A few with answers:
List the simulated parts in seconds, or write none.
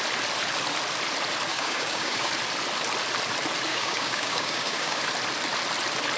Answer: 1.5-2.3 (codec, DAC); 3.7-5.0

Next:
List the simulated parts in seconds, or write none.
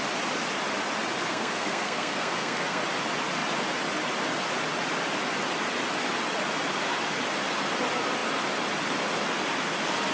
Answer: 1.3-2.8 (codec, SNAC)